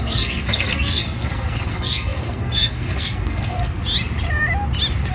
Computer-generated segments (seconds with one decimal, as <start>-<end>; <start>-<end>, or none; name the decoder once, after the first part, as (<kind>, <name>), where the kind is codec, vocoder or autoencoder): 0.0-3.8 (codec, SNAC)